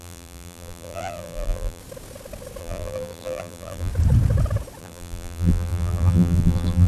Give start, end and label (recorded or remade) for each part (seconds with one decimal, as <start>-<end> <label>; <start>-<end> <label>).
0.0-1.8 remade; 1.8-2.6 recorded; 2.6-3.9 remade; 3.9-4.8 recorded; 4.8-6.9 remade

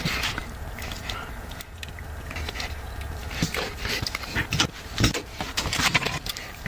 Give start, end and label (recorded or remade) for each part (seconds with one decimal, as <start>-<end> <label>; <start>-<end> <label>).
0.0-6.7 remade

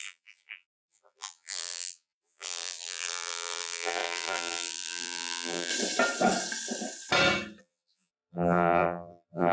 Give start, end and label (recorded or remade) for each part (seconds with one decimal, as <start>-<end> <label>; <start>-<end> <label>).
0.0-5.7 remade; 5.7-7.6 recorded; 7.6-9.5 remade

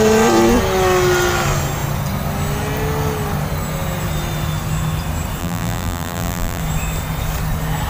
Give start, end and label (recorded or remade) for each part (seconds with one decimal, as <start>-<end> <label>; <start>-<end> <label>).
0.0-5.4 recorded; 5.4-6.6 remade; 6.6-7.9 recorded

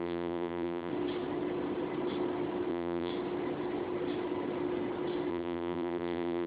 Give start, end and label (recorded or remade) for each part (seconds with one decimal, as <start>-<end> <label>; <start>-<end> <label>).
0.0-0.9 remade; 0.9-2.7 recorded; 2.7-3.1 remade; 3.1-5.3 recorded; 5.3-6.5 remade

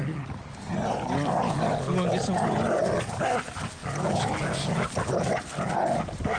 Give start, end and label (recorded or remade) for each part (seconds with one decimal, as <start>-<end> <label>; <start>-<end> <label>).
0.0-6.4 recorded